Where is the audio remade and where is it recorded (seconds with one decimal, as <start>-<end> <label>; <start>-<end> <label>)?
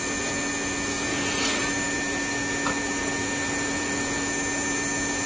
0.0-1.1 recorded; 1.1-1.6 remade; 1.6-3.0 recorded; 3.0-4.3 remade; 4.3-5.3 recorded